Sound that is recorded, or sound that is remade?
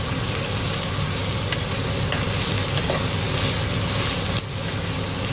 recorded